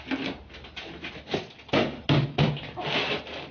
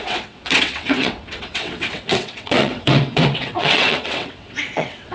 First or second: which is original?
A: first